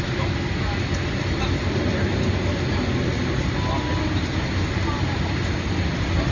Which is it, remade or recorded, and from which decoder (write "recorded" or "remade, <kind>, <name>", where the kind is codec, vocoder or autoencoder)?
recorded